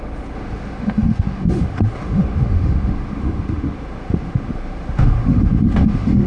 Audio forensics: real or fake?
fake